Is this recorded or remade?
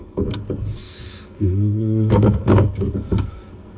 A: remade